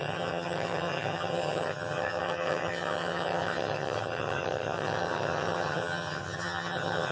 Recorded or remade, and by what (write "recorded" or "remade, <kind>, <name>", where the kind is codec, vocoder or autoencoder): remade, vocoder, HiFi-GAN